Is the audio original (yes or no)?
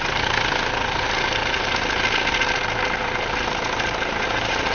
yes